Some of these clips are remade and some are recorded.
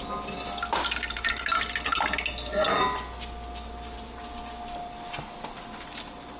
recorded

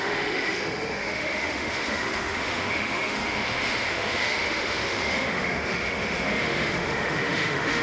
remade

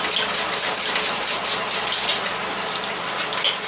recorded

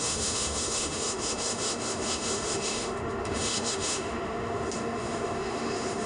remade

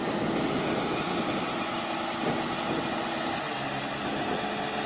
recorded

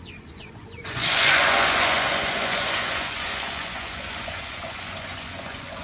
remade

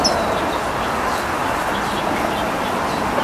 recorded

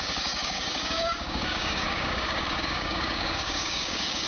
remade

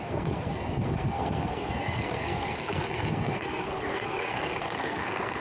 remade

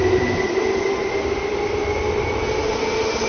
recorded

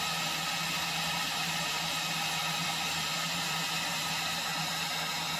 recorded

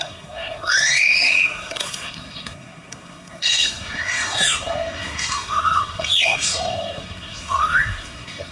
remade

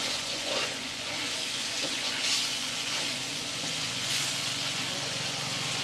remade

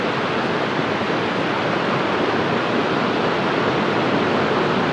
recorded